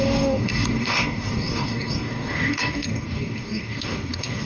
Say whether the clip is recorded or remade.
remade